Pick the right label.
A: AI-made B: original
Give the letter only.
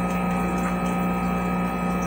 B